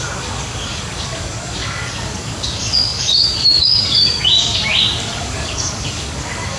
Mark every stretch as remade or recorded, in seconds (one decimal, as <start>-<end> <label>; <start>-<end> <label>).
0.0-6.6 remade